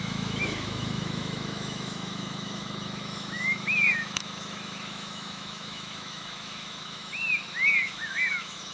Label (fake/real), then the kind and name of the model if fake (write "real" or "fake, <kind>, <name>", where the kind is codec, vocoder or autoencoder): fake, autoencoder, DAC-VAE